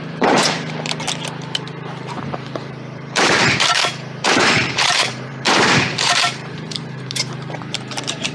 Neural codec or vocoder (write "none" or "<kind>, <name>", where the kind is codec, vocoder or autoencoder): vocoder, BigVGAN v2